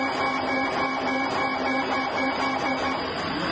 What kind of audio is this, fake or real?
real